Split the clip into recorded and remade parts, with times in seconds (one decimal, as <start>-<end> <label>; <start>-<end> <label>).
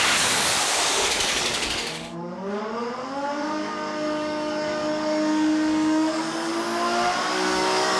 0.0-6.5 remade; 6.5-7.2 recorded; 7.2-8.0 remade